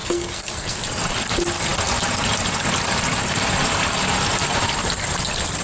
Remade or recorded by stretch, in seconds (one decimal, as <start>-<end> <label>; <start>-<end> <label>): 0.0-0.8 remade; 0.8-5.6 recorded